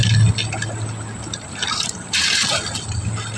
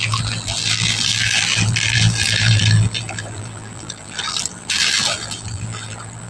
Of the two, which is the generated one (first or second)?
second